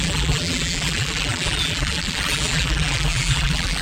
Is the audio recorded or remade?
remade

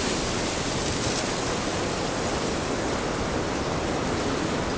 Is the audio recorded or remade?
recorded